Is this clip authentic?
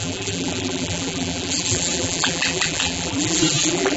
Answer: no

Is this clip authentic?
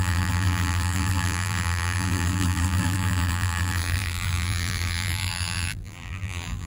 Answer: no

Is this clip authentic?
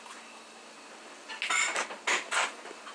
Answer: yes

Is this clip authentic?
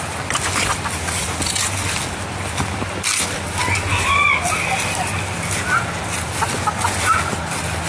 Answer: yes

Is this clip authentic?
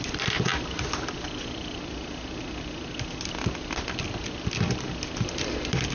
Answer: yes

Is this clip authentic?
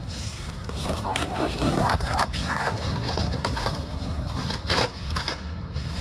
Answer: no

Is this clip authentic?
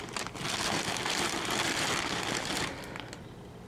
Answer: yes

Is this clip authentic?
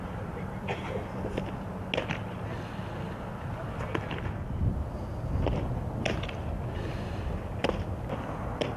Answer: yes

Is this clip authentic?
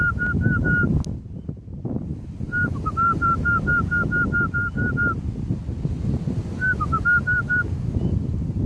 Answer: yes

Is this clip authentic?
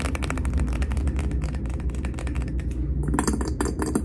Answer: yes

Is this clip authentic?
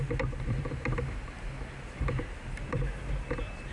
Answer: yes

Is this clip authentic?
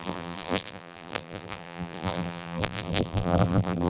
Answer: no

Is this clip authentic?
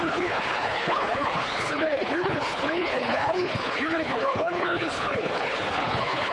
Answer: no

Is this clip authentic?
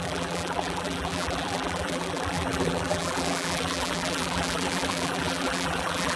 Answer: no